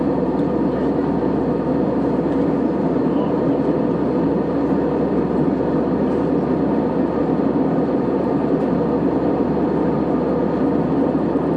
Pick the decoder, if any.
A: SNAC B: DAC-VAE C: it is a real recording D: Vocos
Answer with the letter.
C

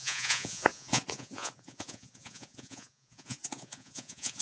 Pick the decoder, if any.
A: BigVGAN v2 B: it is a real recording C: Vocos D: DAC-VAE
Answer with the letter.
C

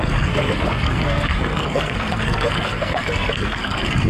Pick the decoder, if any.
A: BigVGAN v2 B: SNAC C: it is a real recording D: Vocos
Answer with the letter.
B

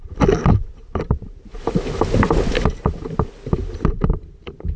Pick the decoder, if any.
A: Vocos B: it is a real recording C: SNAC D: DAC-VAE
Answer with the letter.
B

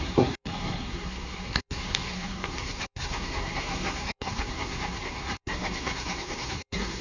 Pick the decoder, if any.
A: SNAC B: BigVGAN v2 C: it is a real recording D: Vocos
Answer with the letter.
A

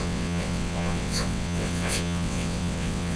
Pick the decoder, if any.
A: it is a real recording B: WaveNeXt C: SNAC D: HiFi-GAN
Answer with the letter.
B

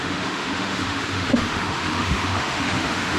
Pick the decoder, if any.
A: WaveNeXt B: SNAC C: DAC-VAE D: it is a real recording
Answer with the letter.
C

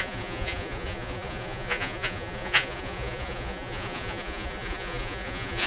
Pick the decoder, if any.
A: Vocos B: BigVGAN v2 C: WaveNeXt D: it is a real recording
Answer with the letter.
A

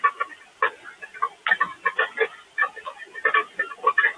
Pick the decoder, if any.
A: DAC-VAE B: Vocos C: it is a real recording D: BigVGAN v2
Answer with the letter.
C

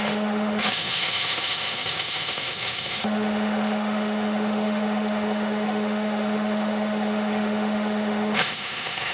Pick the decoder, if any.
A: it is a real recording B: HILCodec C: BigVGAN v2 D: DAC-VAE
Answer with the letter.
D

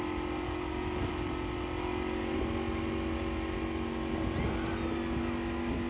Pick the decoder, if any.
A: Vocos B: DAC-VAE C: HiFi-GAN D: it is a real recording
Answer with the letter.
D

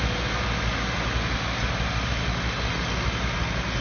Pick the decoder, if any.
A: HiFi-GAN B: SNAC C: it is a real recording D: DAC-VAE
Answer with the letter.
C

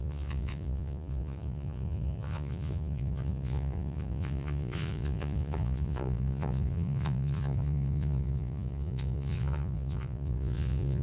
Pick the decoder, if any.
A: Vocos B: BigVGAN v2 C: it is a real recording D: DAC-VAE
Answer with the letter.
A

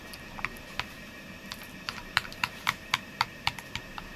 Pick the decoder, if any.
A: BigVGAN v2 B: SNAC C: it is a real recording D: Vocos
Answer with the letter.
A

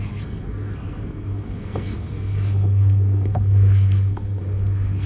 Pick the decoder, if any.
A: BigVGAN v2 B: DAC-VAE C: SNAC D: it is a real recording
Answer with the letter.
C